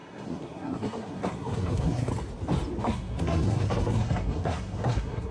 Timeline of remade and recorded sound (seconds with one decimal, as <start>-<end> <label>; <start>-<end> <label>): 0.0-2.1 remade; 2.1-2.8 recorded; 2.8-5.3 remade